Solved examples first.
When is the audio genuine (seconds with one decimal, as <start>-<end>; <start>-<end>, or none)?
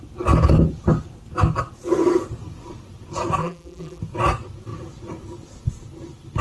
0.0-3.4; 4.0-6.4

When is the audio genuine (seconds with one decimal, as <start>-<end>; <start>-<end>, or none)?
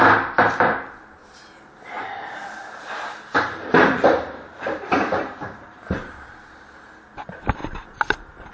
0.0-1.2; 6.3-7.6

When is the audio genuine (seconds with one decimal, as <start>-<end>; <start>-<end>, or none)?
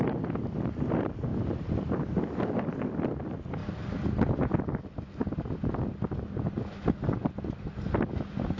0.0-8.6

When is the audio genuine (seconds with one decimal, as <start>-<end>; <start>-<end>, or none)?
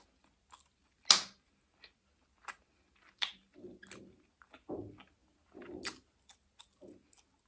0.0-7.5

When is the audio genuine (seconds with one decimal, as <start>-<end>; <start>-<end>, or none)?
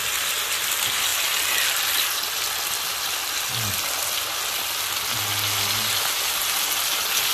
0.0-7.3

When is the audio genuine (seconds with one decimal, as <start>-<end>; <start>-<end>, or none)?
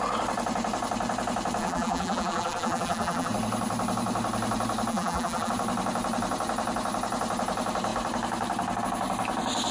0.0-1.6; 3.3-4.9; 5.5-9.7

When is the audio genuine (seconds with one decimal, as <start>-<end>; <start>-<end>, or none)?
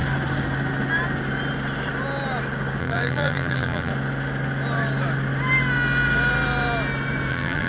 0.0-2.8; 3.9-7.3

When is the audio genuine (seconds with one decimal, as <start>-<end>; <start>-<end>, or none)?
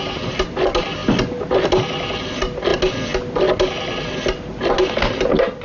0.0-5.6